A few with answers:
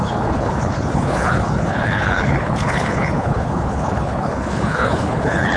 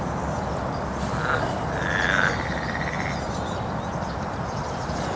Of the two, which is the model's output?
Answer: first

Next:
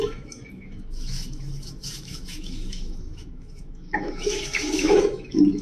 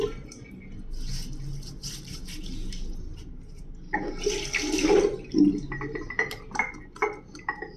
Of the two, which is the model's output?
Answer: first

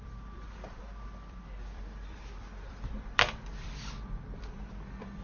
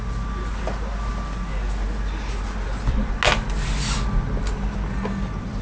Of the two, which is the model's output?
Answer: first